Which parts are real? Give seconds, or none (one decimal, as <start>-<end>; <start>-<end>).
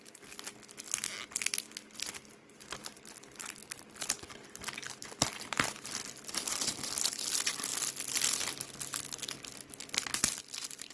0.0-10.9